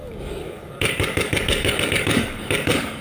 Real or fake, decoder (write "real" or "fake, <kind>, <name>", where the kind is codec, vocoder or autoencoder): fake, codec, DAC